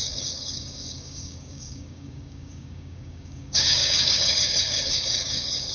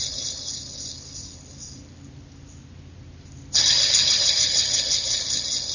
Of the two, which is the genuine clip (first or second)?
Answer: second